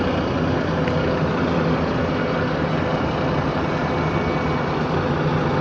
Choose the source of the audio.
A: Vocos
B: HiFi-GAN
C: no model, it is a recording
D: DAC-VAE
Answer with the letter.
C